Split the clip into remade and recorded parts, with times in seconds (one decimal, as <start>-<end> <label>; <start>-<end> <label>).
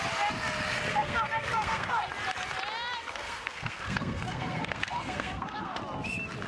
0.0-0.9 recorded; 0.9-2.0 remade; 2.0-3.0 recorded; 3.0-5.8 remade; 5.8-6.5 recorded